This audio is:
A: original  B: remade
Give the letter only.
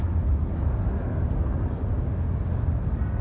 A